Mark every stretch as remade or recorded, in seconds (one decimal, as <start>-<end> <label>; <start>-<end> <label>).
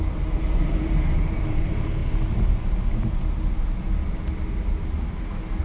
0.0-2.0 remade; 2.0-5.6 recorded